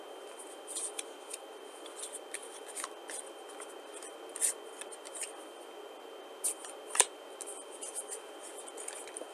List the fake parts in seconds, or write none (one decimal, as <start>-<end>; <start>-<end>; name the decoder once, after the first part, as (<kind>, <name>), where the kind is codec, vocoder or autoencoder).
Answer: none